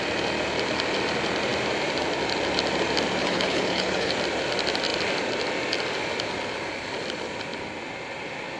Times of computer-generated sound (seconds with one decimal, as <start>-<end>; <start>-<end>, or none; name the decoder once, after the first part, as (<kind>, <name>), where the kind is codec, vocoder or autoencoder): 3.2-4.1 (codec, HILCodec)